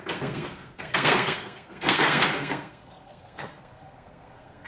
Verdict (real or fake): fake